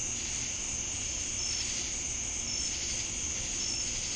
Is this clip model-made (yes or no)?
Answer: no